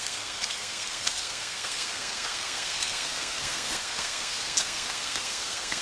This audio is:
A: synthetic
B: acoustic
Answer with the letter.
A